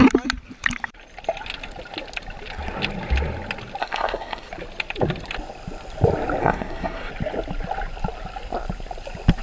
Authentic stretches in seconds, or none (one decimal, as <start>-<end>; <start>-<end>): 0.0-3.8; 4.5-6.4; 7.1-9.4